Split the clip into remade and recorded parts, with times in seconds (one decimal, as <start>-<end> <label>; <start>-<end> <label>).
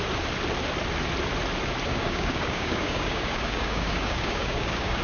0.0-1.9 recorded; 1.9-5.0 remade